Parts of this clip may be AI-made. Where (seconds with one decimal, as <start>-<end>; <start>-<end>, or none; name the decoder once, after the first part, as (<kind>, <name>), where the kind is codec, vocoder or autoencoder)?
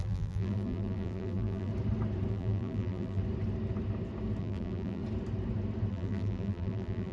0.0-1.7 (vocoder, BigVGAN v2); 2.3-3.2; 4.4-5.0; 5.9-7.1